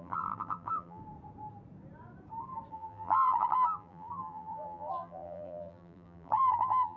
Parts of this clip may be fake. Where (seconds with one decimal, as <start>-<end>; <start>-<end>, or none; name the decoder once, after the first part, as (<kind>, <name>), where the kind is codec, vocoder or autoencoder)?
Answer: 0.0-1.0 (vocoder, BigVGAN v2); 2.7-7.0